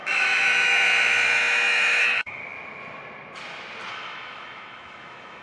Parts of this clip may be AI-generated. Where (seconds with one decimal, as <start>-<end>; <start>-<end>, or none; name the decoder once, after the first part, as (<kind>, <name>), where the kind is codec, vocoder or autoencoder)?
0.0-2.4 (autoencoder, DAC-VAE); 3.9-5.4